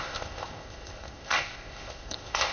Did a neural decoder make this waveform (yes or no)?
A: yes